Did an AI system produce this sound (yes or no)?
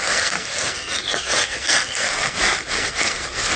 yes